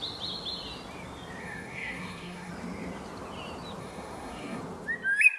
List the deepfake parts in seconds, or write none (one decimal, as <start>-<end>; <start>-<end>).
1.4-2.5; 3.8-4.6